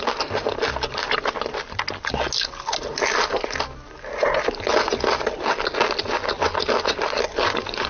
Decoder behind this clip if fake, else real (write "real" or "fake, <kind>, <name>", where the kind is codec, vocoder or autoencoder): real